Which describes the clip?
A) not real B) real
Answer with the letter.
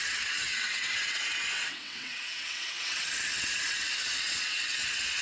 A